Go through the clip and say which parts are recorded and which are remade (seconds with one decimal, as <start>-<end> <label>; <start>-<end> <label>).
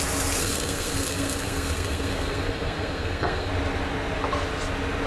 0.0-0.4 recorded; 0.4-3.5 remade; 3.5-5.1 recorded